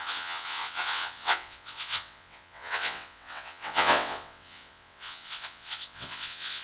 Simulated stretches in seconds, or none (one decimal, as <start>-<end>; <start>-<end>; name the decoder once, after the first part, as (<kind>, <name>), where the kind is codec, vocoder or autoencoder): 0.0-6.6 (vocoder, WaveNeXt)